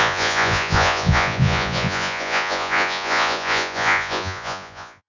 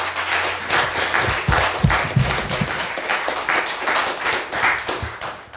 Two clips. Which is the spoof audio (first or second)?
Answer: first